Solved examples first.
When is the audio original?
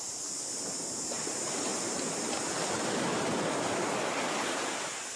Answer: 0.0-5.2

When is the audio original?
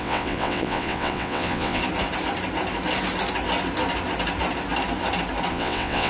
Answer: 1.8-5.5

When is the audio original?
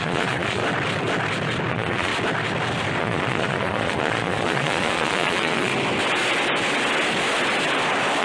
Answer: 0.6-1.7; 2.1-3.0; 5.7-8.2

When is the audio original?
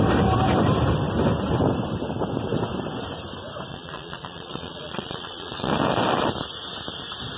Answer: 0.0-3.7; 5.7-7.4